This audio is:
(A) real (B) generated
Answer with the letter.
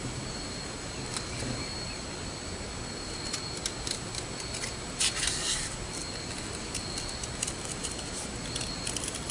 A